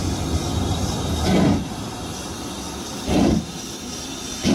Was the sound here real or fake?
real